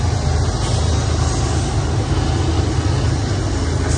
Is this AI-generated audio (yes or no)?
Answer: no